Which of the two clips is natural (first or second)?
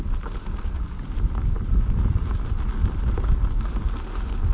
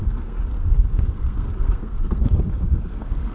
first